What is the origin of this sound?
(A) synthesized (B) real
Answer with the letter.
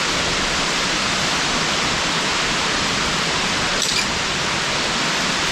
B